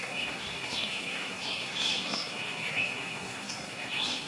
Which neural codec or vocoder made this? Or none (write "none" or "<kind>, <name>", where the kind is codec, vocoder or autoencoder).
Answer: codec, SNAC